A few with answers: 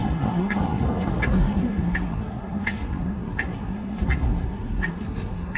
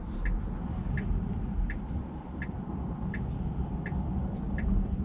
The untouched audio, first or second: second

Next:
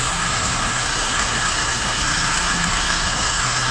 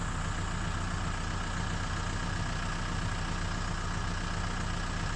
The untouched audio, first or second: second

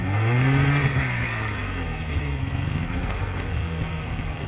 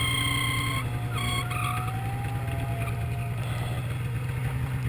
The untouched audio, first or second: second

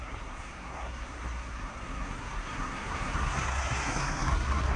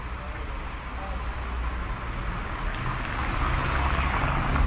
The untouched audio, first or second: second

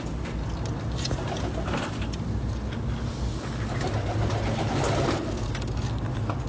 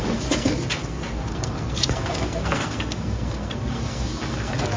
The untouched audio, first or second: first